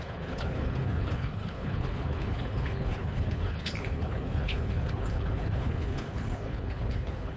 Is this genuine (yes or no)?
no